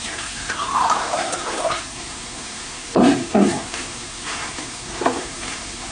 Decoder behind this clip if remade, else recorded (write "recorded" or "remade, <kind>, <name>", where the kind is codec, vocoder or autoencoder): remade, codec, SNAC